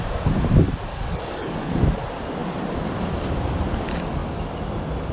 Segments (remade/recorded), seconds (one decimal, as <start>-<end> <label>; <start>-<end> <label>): 0.0-0.9 recorded; 0.9-1.7 remade; 1.7-5.1 recorded